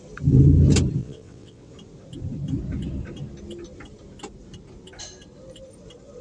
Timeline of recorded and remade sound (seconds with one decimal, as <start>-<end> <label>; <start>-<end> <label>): 0.0-1.0 recorded; 1.0-1.7 remade; 1.7-6.2 recorded